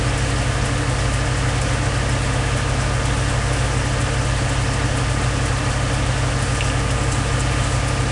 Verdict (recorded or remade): recorded